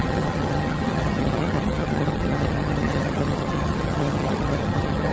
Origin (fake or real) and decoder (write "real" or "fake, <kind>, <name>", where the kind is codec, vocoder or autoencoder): fake, vocoder, HiFi-GAN